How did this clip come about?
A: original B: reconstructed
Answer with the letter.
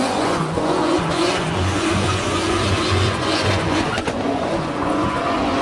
B